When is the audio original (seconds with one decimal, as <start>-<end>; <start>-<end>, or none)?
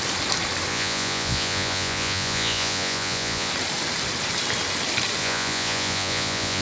0.0-0.7; 3.5-5.2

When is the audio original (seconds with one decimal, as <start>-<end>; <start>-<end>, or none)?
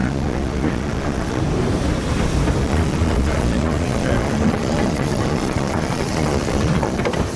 1.4-2.6; 7.0-7.4